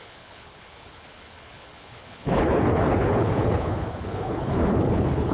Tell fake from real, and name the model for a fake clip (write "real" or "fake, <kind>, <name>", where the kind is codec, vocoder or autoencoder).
fake, codec, HILCodec